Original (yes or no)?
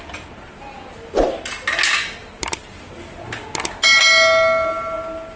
yes